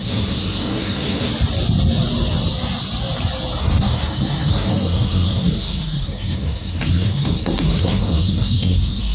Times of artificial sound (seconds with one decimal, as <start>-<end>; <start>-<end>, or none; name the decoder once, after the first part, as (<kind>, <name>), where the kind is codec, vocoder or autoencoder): 0.0-1.3 (codec, SNAC); 3.6-9.1